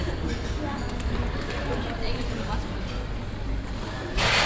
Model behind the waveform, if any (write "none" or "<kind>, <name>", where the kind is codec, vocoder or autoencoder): none